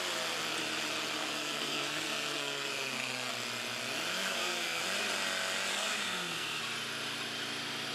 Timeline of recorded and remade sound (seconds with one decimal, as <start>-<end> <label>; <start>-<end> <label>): 0.0-1.2 recorded; 1.2-3.3 remade; 3.3-4.1 recorded; 4.1-4.8 remade; 4.8-5.7 recorded; 5.7-6.6 remade; 6.6-7.9 recorded